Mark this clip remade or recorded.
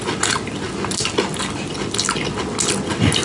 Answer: recorded